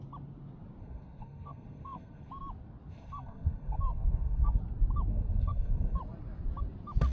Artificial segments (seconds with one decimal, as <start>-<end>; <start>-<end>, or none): 0.8-2.3; 2.9-4.6; 5.1-6.0